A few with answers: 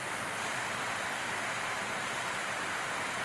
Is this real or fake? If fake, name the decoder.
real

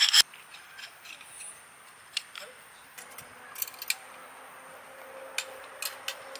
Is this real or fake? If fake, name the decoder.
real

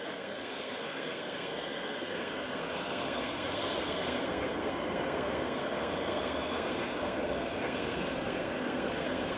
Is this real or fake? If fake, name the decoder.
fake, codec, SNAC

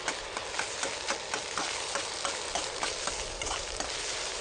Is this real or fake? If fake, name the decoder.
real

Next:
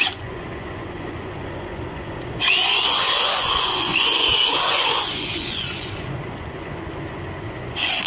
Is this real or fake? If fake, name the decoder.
fake, vocoder, Vocos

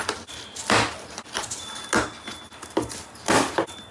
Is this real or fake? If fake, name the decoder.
real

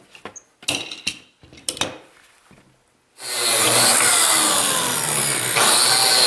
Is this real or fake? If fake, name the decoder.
real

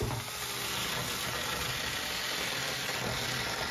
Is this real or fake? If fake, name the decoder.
real